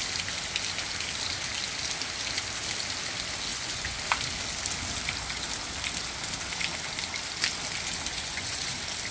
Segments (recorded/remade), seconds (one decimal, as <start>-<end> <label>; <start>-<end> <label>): 0.0-3.5 recorded; 3.5-4.0 remade; 4.0-8.1 recorded; 8.1-8.7 remade; 8.7-9.1 recorded